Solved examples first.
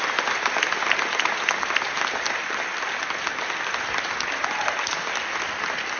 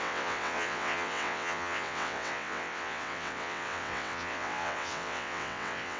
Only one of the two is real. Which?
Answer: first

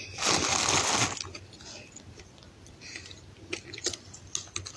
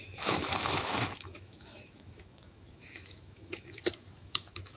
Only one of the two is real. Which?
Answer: first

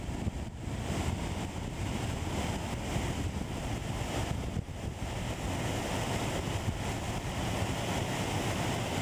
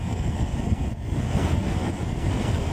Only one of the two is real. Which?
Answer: first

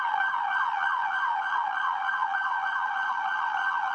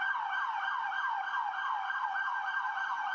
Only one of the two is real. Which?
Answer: second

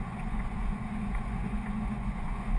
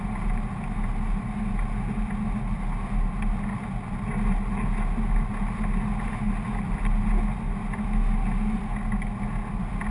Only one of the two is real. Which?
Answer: second